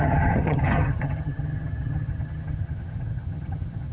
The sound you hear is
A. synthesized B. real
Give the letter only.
A